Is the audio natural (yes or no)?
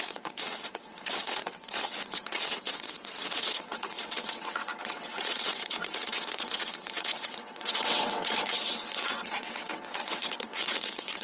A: no